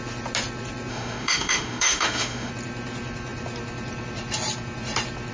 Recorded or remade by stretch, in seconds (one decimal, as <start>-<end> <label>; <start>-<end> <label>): 0.0-0.9 recorded; 0.9-2.5 remade; 2.5-5.3 recorded